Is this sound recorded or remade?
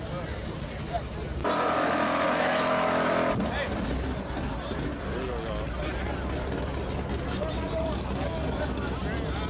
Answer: recorded